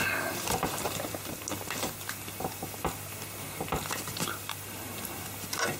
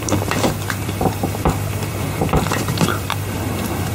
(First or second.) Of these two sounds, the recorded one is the first